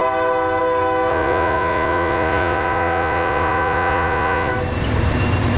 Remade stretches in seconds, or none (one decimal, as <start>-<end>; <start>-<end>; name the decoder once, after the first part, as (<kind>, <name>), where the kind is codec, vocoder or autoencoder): 1.1-4.5 (vocoder, Vocos)